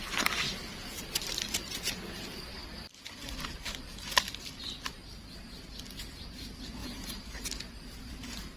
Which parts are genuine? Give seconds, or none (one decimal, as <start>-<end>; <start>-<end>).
0.0-6.8; 8.1-8.6